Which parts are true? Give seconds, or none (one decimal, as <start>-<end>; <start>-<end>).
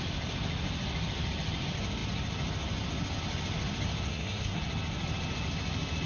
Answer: 0.0-4.1; 4.6-6.1